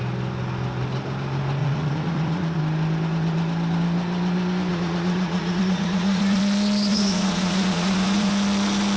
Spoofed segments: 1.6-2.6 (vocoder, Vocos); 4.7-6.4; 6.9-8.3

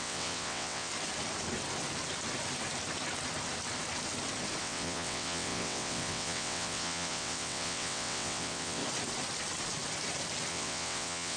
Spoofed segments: 0.0-0.9 (vocoder, WaveNeXt); 4.6-8.8; 10.5-11.4